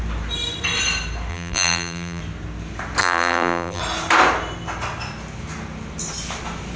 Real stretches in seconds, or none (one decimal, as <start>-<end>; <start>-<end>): 0.0-1.3; 2.2-3.0; 3.8-6.8